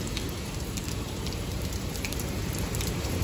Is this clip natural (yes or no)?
no